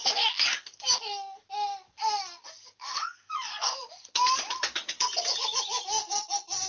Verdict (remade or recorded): remade